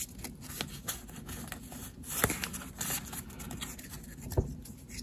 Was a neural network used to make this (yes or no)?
no